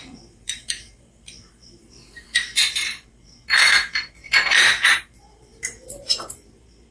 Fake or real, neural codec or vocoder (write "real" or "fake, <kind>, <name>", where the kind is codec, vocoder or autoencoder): fake, vocoder, BigVGAN v2